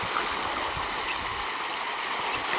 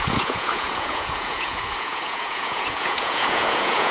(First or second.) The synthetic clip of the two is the second